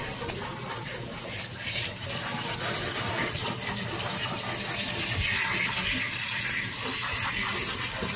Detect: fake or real real